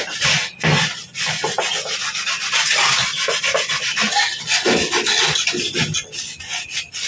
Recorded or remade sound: recorded